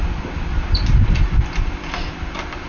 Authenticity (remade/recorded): recorded